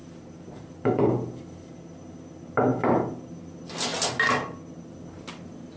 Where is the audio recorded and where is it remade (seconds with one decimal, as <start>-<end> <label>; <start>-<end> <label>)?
0.0-1.4 remade; 1.4-5.8 recorded